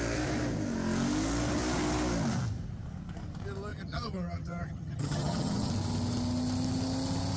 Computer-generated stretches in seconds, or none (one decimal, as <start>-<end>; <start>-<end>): 3.7-5.7